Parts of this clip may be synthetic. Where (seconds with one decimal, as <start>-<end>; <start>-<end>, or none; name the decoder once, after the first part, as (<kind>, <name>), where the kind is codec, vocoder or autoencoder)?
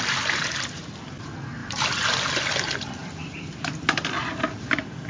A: 1.6-2.4 (vocoder, BigVGAN v2); 3.0-3.7